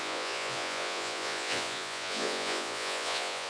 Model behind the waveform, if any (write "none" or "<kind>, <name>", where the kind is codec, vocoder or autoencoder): vocoder, Vocos